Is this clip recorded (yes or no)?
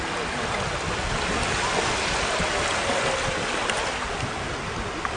yes